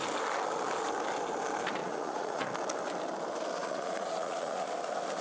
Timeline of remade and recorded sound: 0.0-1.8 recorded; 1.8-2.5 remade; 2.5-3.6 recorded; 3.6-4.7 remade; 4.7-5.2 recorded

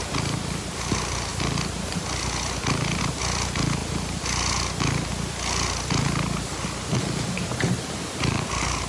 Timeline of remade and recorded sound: 0.0-8.9 recorded

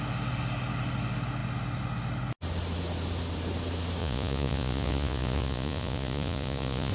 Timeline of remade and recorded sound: 0.0-4.0 recorded; 4.0-6.9 remade

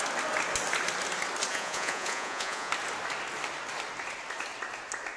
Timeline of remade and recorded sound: 0.0-1.5 recorded; 1.5-2.7 remade; 2.7-5.2 recorded

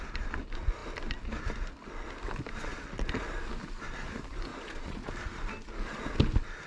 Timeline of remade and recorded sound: 0.0-4.5 recorded; 4.5-5.1 remade; 5.1-6.7 recorded

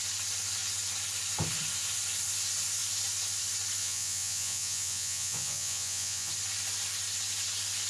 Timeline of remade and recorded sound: 0.0-3.8 recorded; 3.8-6.3 remade; 6.3-7.9 recorded